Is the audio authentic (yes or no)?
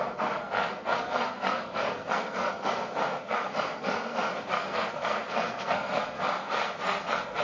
no